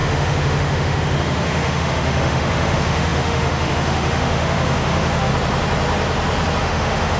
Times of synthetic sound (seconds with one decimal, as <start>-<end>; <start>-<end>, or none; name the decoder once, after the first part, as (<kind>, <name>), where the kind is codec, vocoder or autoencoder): 0.0-5.3 (autoencoder, DAC-VAE); 6.6-7.2